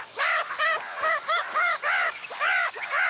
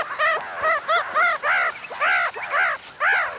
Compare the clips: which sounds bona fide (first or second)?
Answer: second